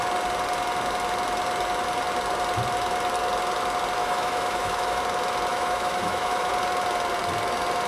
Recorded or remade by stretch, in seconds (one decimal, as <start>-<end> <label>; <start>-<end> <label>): 0.0-4.0 recorded; 4.0-5.0 remade; 5.0-5.5 recorded; 5.5-6.5 remade; 6.5-7.9 recorded